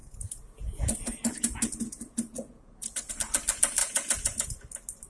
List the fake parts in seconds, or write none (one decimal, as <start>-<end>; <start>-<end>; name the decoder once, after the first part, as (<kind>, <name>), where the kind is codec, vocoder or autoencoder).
0.0-3.1 (vocoder, Vocos); 3.8-4.5